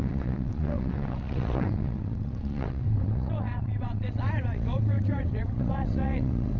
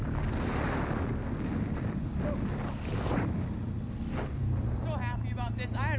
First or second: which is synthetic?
first